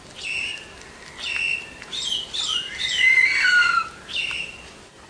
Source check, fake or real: real